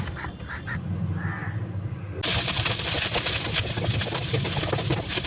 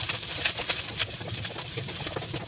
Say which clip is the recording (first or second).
first